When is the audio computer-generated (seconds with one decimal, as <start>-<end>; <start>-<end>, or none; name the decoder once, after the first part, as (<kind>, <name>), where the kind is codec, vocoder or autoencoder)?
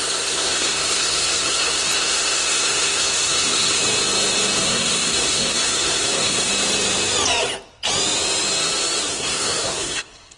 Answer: 0.0-3.8 (codec, SNAC); 4.6-6.5; 9.1-10.4